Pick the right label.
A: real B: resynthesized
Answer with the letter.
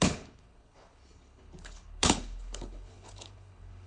B